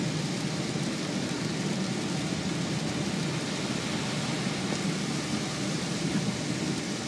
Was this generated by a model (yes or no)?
no